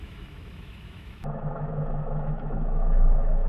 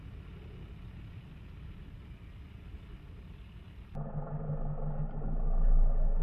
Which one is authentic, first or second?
second